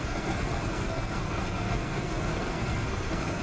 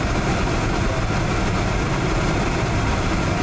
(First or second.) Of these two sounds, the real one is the second